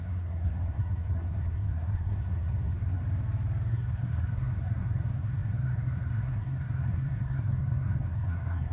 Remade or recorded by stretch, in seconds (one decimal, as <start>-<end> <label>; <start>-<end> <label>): 0.0-3.0 remade; 3.0-3.7 recorded; 3.7-8.7 remade